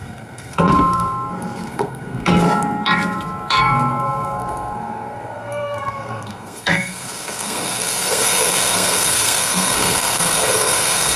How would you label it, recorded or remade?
remade